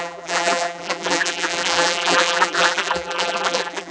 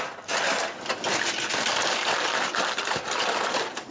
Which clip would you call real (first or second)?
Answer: second